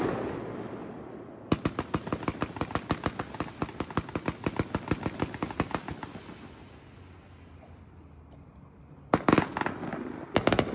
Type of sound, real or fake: real